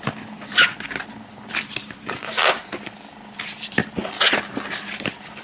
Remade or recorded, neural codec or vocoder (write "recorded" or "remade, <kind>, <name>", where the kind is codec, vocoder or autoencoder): recorded